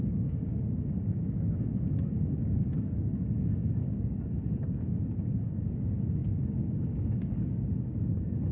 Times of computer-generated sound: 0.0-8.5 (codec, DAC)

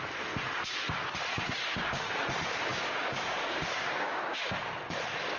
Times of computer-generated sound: 1.3-2.1 (codec, DAC); 2.7-4.5

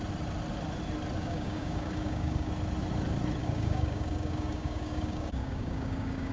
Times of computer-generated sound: 1.2-2.5 (codec, DAC); 3.4-6.3

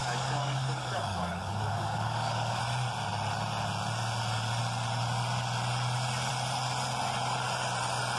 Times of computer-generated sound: 0.0-2.6 (codec, DAC)